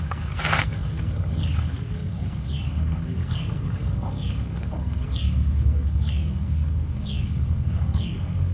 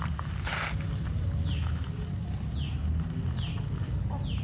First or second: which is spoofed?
first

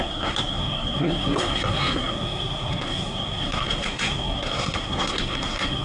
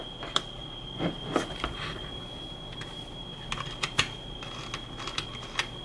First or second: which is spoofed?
first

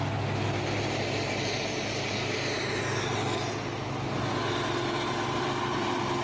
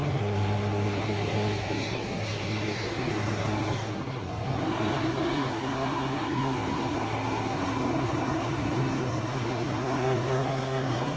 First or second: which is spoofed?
second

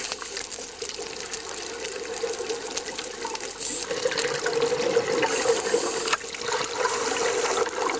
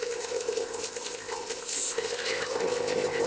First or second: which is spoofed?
second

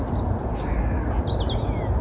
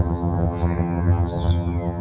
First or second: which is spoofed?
second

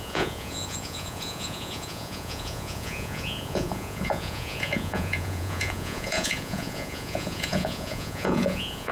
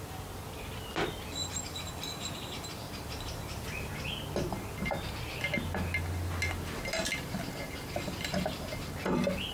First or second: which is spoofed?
first